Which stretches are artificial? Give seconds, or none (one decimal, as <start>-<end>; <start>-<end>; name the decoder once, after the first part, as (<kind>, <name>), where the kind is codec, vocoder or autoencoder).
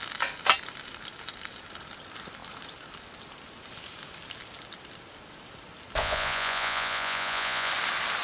6.0-7.7 (vocoder, Vocos)